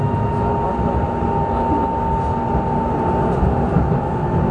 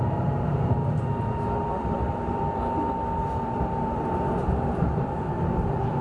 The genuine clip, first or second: first